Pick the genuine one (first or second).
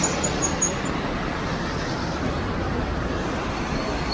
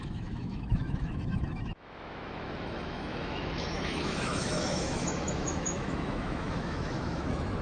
first